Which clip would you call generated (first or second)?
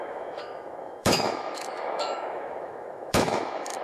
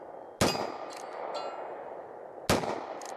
first